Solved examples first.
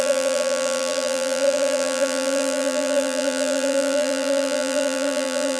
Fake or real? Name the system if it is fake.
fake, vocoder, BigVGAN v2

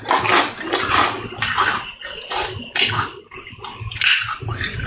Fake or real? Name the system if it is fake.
real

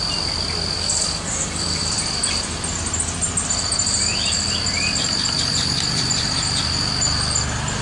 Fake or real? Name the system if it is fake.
real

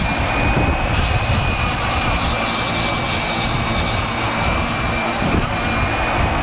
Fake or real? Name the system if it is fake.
real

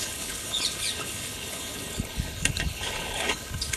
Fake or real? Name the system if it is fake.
fake, codec, HILCodec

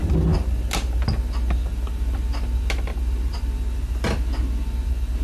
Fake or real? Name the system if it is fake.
real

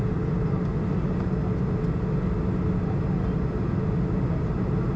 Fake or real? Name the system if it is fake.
real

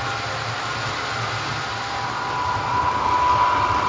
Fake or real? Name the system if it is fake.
real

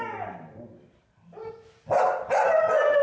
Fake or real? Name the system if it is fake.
real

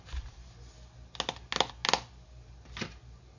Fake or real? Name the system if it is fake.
real